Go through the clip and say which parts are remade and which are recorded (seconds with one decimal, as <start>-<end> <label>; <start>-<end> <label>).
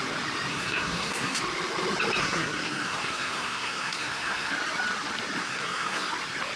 0.0-0.5 recorded; 0.5-1.4 remade; 1.4-2.2 recorded; 2.2-4.5 remade; 4.5-5.4 recorded; 5.4-6.1 remade; 6.1-6.6 recorded